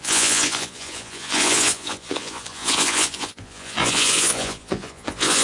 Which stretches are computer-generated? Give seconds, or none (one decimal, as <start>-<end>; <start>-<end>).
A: 0.0-5.4